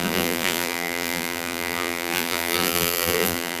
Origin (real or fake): fake